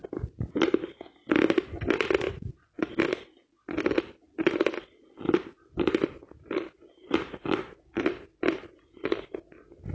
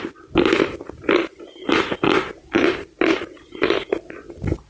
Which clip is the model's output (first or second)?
second